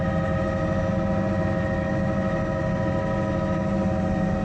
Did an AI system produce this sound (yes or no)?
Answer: no